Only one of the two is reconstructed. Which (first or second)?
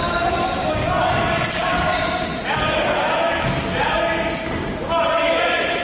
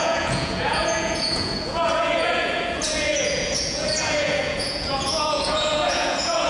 second